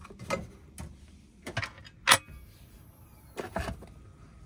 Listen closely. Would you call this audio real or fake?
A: real